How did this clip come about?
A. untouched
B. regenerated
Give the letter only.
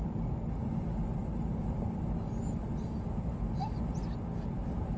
A